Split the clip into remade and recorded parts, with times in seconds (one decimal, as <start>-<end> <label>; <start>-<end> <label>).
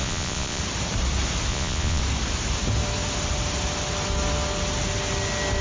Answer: 0.0-0.6 remade; 0.6-1.5 recorded; 1.5-2.0 remade; 2.0-5.6 recorded